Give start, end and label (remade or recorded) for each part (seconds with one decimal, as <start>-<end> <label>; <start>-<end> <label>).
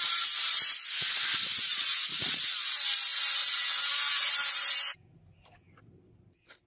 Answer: 0.0-1.7 recorded; 1.7-2.4 remade; 2.4-6.7 recorded